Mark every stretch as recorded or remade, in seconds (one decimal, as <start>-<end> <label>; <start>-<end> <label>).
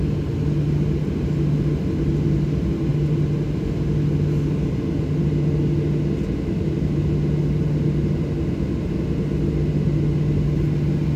0.0-11.2 recorded